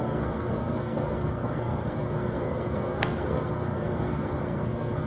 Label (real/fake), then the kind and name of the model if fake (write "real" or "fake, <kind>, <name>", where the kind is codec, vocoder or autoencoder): fake, codec, SNAC